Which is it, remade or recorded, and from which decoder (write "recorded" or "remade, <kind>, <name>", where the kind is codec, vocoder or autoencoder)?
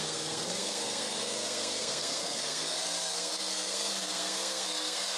remade, codec, SNAC